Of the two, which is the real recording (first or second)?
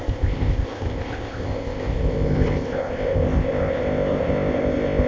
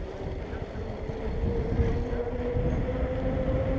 second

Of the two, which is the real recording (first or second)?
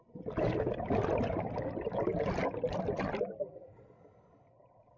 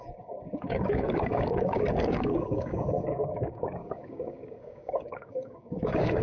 first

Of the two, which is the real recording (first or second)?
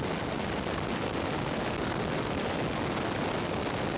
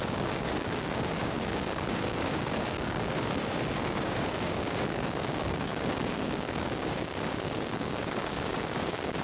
first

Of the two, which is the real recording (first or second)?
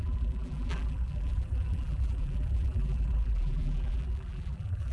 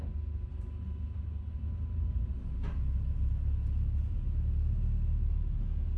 second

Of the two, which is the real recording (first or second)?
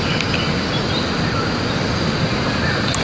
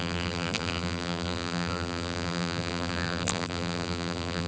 first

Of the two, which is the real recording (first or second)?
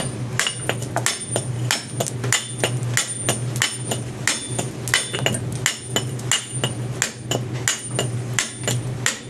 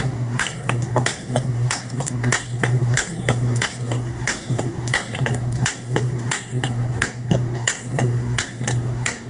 first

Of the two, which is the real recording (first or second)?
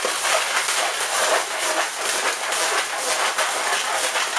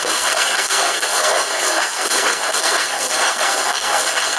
first